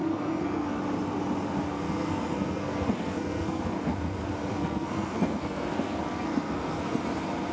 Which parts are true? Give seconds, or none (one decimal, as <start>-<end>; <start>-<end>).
0.8-1.7; 3.6-4.5; 7.0-7.5